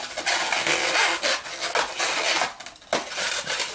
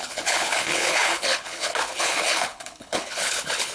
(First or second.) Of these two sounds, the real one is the first